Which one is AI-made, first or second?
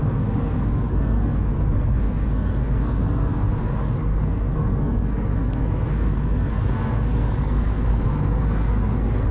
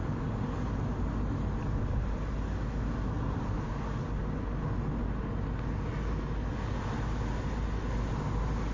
first